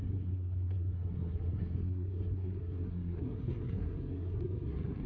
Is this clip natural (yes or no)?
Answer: no